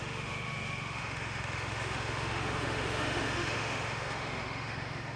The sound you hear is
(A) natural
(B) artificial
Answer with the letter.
B